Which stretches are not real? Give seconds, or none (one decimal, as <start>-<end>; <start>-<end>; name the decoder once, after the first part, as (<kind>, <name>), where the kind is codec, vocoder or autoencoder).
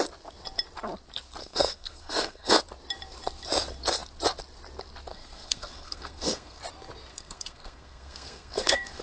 1.4-2.6 (codec, SNAC); 5.1-6.6; 7.1-9.0